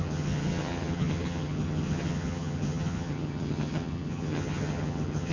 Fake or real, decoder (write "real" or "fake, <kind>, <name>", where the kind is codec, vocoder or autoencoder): fake, vocoder, HiFi-GAN